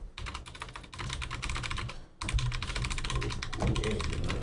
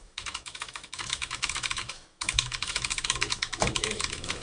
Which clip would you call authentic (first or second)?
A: first